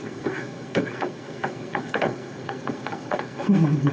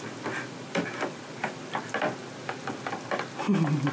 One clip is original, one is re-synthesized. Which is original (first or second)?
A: second